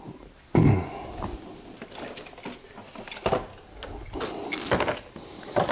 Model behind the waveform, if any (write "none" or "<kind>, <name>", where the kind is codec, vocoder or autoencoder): none